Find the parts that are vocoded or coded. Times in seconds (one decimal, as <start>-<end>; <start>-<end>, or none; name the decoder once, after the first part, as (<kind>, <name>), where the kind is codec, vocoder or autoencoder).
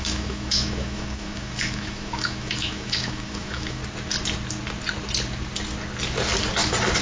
0.0-3.8 (autoencoder, DAC-VAE)